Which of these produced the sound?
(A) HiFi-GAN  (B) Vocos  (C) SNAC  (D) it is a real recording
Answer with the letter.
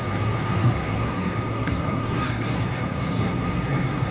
C